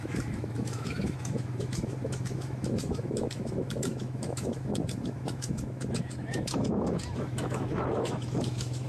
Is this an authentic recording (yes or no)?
no